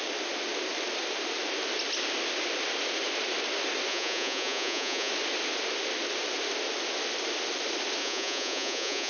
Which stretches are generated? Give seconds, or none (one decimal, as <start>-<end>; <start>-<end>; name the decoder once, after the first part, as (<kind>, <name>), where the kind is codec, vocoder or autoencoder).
3.9-5.1 (vocoder, Vocos); 8.0-9.1